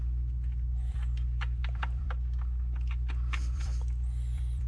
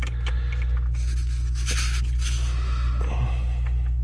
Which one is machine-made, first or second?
first